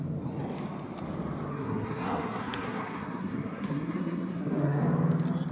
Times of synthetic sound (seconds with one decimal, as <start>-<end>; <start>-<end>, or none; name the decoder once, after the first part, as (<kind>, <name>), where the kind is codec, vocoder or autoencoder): 1.5-4.8 (codec, SNAC)